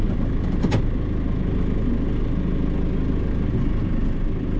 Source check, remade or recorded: recorded